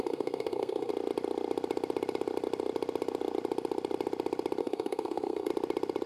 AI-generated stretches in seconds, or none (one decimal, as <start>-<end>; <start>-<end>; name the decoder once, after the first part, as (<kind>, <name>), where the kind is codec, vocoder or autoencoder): 0.0-0.9 (codec, SNAC); 4.6-5.5